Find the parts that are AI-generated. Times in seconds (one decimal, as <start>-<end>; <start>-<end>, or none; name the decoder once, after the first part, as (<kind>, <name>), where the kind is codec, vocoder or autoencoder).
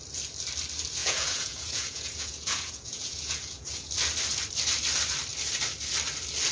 1.0-3.9 (vocoder, Vocos)